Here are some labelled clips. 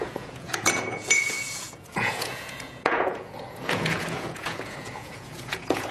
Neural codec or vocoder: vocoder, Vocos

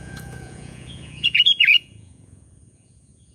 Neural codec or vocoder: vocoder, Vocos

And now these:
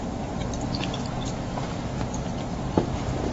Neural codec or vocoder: none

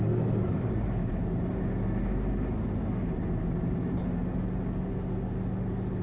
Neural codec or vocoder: none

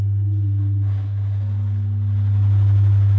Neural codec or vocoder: none